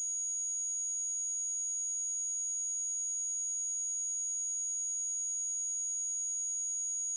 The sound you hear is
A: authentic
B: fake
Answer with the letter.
A